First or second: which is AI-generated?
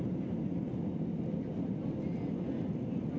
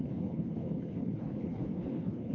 second